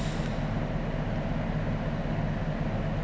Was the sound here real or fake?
real